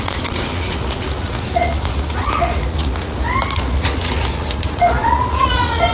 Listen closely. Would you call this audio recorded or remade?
remade